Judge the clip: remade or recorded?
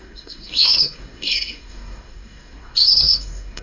remade